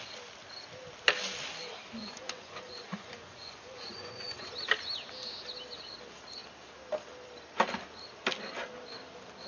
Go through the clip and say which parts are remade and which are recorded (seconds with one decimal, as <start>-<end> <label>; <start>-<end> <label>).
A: 0.0-2.0 recorded; 2.0-4.5 remade; 4.5-9.5 recorded

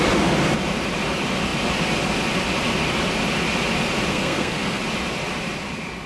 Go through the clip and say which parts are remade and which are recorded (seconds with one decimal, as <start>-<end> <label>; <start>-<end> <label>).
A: 0.0-4.1 recorded; 4.1-4.8 remade; 4.8-6.1 recorded

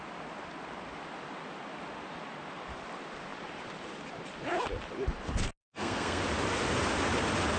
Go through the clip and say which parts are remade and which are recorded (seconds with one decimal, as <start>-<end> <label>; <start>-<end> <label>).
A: 0.0-5.6 recorded; 5.6-6.2 remade; 6.2-7.6 recorded